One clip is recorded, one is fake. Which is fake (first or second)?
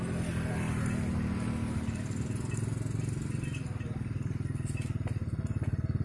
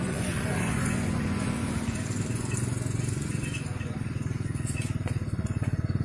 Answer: second